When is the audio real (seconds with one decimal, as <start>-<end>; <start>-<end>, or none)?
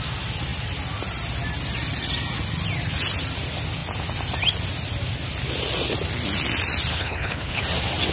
0.0-6.9; 7.6-8.1